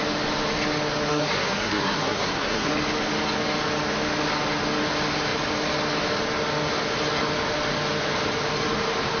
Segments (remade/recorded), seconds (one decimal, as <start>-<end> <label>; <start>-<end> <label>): 0.0-1.1 recorded; 1.1-2.7 remade; 2.7-9.2 recorded